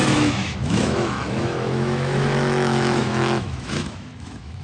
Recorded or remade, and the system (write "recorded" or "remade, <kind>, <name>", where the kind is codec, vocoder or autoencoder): remade, autoencoder, DAC-VAE